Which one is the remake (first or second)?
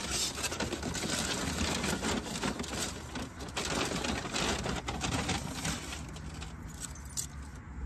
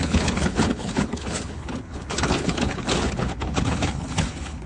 second